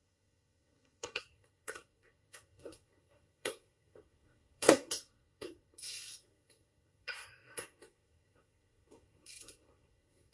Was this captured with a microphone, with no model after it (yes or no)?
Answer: no